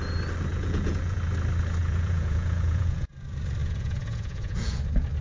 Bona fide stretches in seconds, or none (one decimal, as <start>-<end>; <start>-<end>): 0.0-0.5; 1.2-1.8; 3.1-3.6; 4.8-5.2